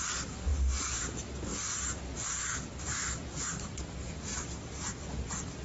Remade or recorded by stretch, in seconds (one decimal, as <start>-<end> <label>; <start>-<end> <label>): 0.0-0.5 recorded; 0.5-1.0 remade; 1.0-1.5 recorded; 1.5-3.2 remade; 3.2-5.6 recorded

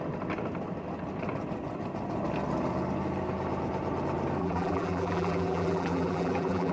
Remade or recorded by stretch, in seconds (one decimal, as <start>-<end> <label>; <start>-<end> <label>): 0.0-4.4 recorded; 4.4-6.7 remade

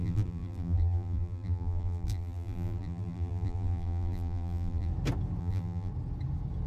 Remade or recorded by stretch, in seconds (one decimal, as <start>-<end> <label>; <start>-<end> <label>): 0.0-4.9 remade; 4.9-5.4 recorded; 5.4-5.9 remade; 5.9-6.7 recorded

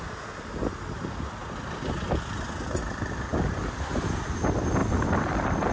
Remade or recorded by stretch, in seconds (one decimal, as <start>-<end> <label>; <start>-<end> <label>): 0.0-1.4 recorded; 1.4-2.2 remade; 2.2-4.8 recorded; 4.8-5.7 remade